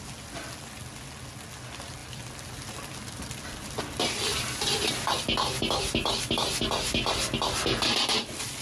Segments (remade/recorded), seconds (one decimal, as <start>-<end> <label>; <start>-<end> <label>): 0.0-2.0 recorded; 2.0-3.8 remade; 3.8-4.3 recorded; 4.3-4.9 remade; 4.9-8.6 recorded